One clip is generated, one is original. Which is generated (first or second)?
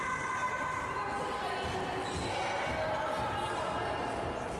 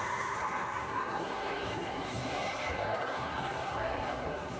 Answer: second